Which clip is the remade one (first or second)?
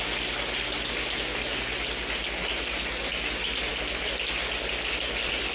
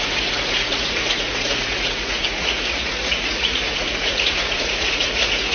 second